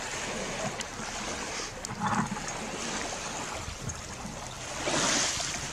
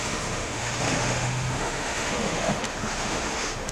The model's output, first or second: second